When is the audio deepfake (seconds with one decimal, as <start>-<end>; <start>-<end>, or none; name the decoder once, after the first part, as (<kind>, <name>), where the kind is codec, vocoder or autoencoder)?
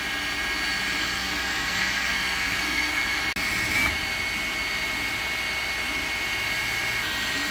1.0-3.2 (codec, SNAC)